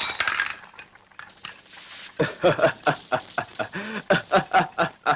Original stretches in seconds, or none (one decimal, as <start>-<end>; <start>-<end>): 0.0-5.2